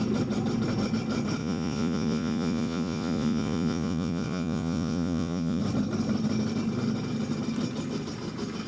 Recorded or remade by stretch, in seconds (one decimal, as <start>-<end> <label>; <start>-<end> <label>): 0.0-1.4 recorded; 1.4-5.6 remade; 5.6-8.7 recorded

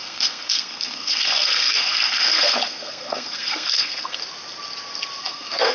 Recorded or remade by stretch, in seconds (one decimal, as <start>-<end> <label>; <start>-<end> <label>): 0.0-4.2 remade; 4.2-5.2 recorded; 5.2-5.7 remade

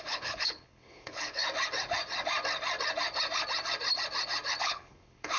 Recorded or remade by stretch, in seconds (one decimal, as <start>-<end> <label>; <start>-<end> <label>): 0.0-1.4 remade; 1.4-4.6 recorded; 4.6-5.4 remade

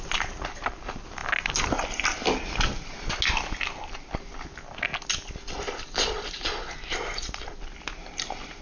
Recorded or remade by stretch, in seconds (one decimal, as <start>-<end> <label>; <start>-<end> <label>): 0.0-8.6 recorded

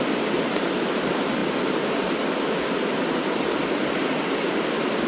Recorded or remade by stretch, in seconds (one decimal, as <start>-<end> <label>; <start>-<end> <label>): 0.0-5.1 recorded

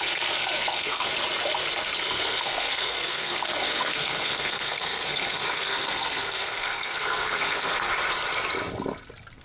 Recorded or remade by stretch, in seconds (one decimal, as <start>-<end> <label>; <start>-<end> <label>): 0.0-1.1 remade; 1.1-2.1 recorded; 2.1-7.9 remade; 7.9-9.4 recorded

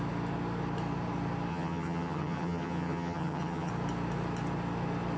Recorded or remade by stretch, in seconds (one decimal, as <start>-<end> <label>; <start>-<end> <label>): 0.0-1.5 recorded; 1.5-3.7 remade; 3.7-5.2 recorded